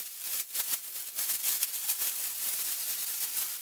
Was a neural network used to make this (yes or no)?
no